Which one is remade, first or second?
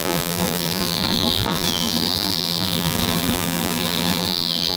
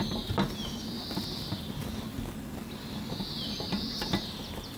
first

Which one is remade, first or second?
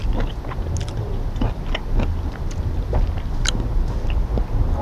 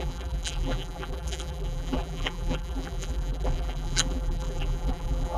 second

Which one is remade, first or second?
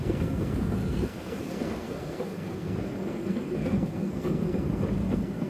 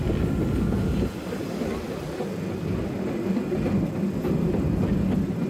first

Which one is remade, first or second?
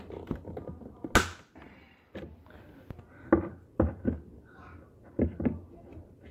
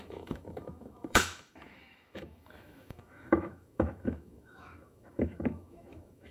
second